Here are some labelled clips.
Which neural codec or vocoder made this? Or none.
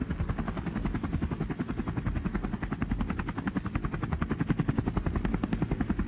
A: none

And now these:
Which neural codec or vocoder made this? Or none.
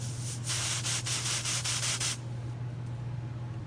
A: none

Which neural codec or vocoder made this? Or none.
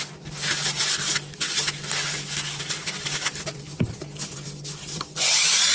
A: none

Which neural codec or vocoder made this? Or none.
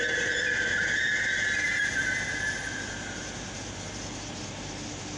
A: none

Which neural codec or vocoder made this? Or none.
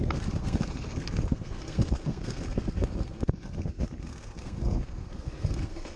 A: codec, SNAC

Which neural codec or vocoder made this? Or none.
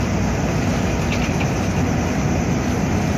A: none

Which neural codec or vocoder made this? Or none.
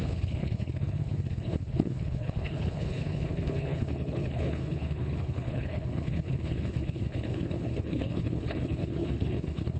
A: codec, HILCodec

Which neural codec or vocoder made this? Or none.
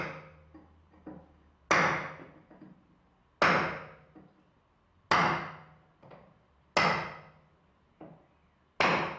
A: none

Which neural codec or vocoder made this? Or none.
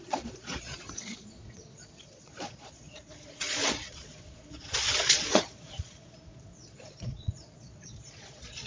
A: vocoder, Vocos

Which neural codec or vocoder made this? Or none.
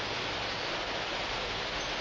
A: none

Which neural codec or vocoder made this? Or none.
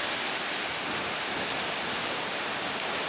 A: none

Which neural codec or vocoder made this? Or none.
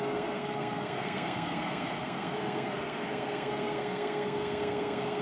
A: codec, SNAC